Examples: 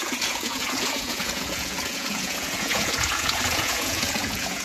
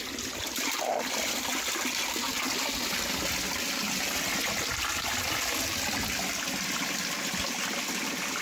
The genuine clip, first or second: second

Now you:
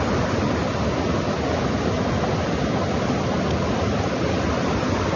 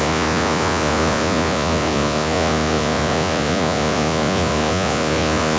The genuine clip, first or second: first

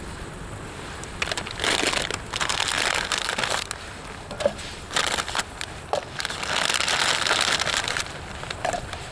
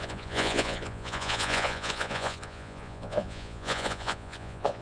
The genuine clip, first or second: first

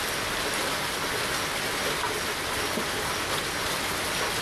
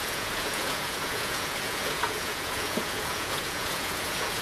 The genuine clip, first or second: first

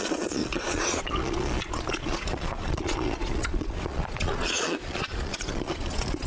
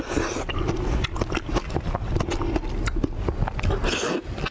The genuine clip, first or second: second